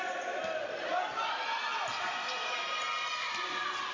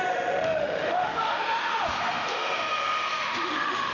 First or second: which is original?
first